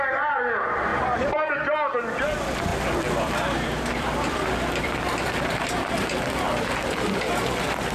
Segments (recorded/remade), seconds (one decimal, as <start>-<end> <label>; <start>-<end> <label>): 0.0-0.9 recorded; 0.9-1.5 remade; 1.5-2.7 recorded; 2.7-7.2 remade; 7.2-7.9 recorded